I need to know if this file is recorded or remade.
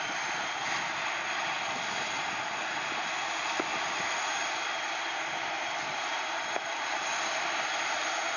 remade